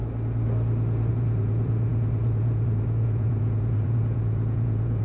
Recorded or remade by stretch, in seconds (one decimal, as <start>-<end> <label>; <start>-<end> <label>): 0.0-1.1 recorded; 1.1-5.0 remade